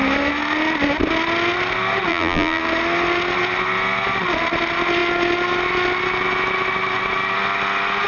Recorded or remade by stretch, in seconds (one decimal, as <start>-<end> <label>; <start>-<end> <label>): 0.0-2.1 recorded; 2.1-2.6 remade; 2.6-8.1 recorded